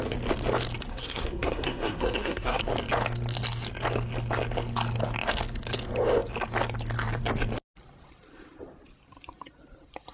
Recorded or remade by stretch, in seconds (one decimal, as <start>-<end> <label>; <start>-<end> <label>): 0.0-0.9 recorded; 0.9-2.6 remade; 2.6-10.1 recorded